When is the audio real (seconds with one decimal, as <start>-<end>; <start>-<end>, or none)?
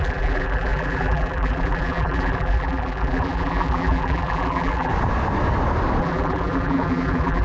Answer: 4.9-6.0